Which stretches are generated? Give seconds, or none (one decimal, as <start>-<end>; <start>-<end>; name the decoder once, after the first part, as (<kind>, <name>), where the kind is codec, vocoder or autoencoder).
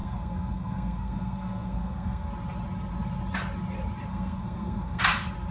0.0-2.3 (codec, SNAC); 4.1-5.0